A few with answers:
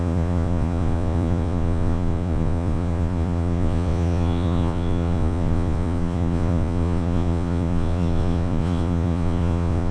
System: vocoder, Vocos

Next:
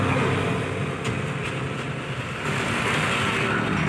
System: none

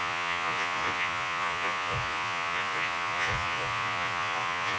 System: vocoder, Vocos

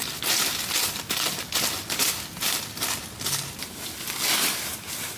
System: none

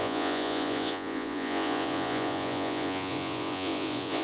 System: vocoder, Vocos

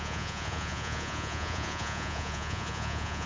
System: vocoder, Vocos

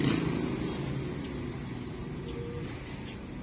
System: none